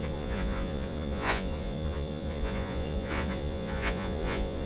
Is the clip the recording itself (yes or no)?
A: no